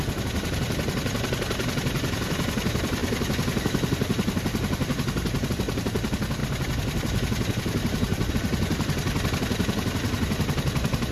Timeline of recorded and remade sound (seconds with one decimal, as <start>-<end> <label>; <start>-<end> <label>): 0.0-11.1 recorded